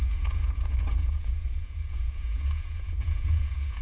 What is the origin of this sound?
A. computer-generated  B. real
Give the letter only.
A